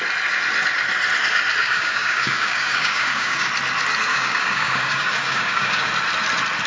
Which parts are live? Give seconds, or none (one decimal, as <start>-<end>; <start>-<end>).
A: 0.0-1.6; 3.5-4.1; 5.9-6.7